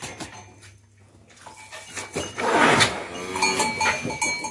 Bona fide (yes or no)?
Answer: yes